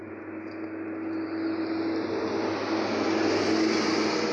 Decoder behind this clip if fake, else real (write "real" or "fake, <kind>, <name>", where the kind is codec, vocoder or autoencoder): real